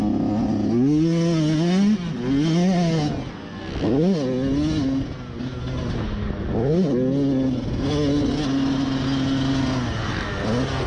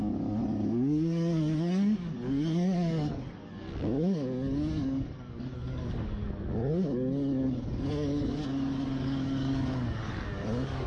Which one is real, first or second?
first